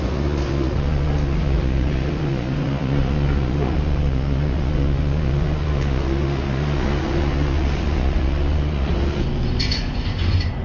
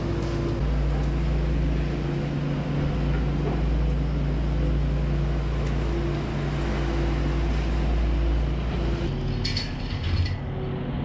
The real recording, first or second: second